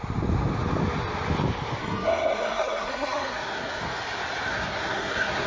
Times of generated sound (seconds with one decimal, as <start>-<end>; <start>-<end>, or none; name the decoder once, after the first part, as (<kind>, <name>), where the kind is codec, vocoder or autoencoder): 1.8-3.8 (codec, SNAC); 4.5-5.5